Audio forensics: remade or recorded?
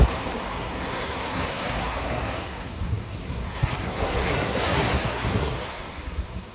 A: remade